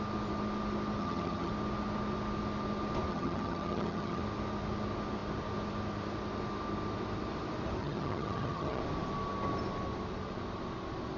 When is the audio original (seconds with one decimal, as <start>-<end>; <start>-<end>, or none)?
0.0-1.0; 1.5-3.1; 4.2-7.8; 8.8-11.2